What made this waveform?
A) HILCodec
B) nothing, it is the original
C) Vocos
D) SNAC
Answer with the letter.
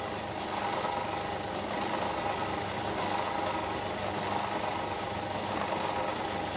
B